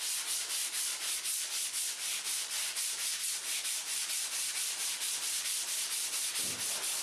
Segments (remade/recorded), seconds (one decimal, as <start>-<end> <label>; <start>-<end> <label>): 0.0-2.1 recorded; 2.1-6.3 remade; 6.3-7.0 recorded

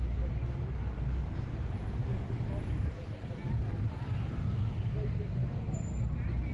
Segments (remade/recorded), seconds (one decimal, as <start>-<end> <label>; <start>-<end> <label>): 0.0-1.2 recorded; 1.2-4.9 remade; 4.9-5.4 recorded; 5.4-6.0 remade; 6.0-6.5 recorded

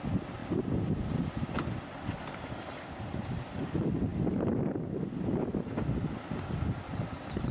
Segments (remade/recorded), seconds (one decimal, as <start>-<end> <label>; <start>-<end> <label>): 0.0-7.5 recorded

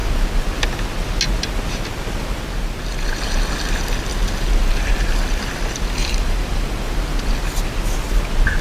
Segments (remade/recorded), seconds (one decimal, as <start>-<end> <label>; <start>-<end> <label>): 0.0-6.0 recorded; 6.0-6.7 remade; 6.7-8.6 recorded

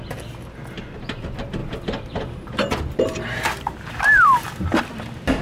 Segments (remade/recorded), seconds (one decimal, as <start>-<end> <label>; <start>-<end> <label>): 0.0-1.6 recorded; 1.6-4.8 remade; 4.8-5.4 recorded

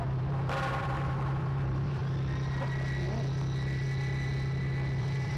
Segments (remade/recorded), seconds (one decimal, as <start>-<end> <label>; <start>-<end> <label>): 0.0-2.0 remade; 2.0-5.0 recorded; 5.0-5.4 remade

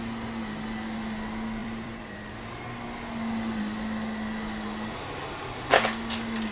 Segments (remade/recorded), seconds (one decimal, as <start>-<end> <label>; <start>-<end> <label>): 0.0-1.6 recorded; 1.6-2.4 remade; 2.4-6.5 recorded